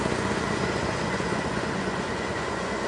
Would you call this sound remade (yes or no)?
yes